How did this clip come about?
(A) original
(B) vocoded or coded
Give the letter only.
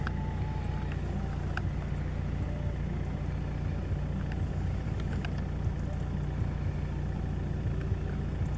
A